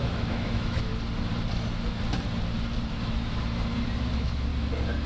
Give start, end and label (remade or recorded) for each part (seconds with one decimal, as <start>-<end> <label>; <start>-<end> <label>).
0.0-0.9 remade; 0.9-4.0 recorded; 4.0-4.5 remade; 4.5-5.1 recorded